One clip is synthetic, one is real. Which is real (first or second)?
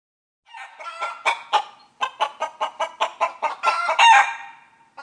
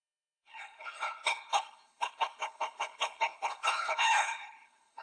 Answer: first